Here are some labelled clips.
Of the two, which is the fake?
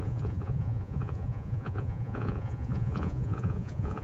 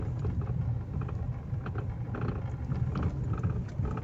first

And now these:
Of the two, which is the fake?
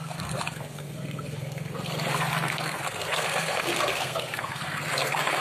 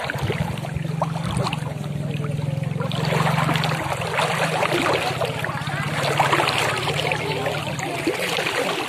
first